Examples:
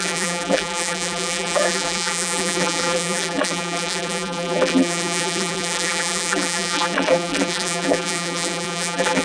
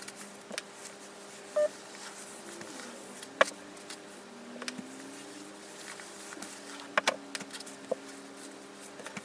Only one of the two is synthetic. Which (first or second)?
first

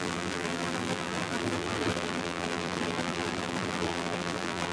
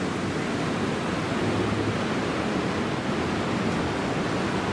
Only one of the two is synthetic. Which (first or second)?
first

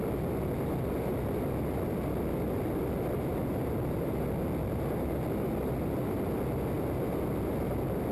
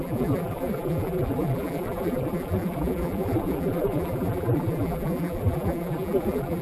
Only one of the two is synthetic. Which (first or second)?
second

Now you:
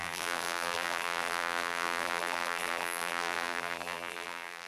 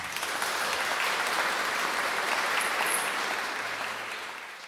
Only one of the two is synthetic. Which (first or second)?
first